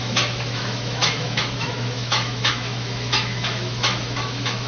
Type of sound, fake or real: fake